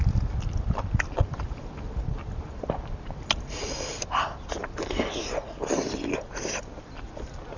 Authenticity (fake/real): real